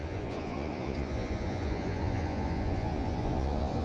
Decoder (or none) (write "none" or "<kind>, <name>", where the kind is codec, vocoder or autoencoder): vocoder, Vocos